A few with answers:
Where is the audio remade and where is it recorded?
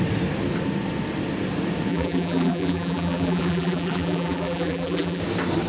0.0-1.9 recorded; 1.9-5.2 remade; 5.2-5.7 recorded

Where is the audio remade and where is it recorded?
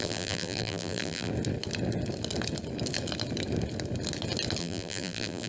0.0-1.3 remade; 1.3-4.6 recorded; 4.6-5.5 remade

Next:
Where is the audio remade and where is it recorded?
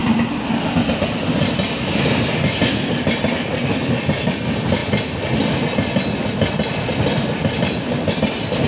0.0-8.7 recorded